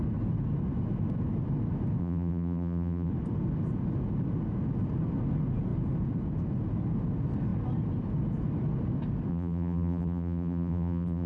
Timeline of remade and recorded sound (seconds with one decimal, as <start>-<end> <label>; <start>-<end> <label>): 0.0-2.0 recorded; 2.0-3.1 remade; 3.1-9.3 recorded; 9.3-11.3 remade